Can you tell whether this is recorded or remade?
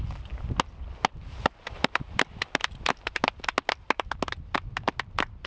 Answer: recorded